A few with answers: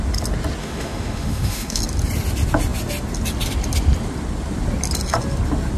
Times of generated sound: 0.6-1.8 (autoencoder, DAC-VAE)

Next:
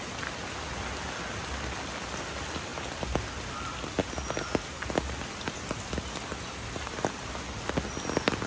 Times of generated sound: none